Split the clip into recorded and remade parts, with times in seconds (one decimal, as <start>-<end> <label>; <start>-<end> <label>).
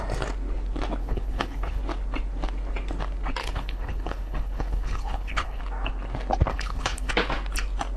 0.0-1.0 recorded; 1.0-1.8 remade; 1.8-3.4 recorded; 3.4-5.6 remade; 5.6-6.5 recorded; 6.5-7.1 remade; 7.1-8.0 recorded